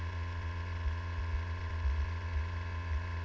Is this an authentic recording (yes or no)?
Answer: no